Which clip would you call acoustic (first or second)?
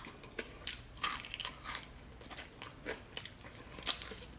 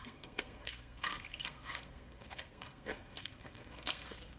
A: first